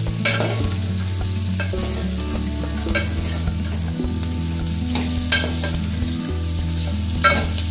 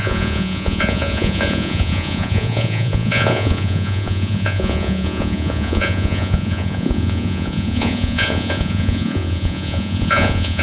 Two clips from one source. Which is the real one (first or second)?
first